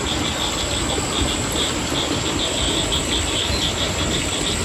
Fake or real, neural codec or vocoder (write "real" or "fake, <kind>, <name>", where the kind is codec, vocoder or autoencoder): real